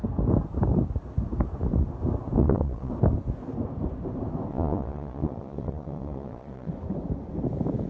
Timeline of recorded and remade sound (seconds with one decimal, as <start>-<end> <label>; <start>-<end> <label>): 0.0-2.4 recorded; 2.4-2.9 remade; 2.9-4.5 recorded; 4.5-6.7 remade; 6.7-7.9 recorded